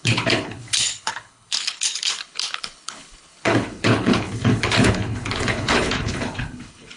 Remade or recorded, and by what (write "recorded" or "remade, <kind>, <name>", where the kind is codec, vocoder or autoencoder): remade, codec, HILCodec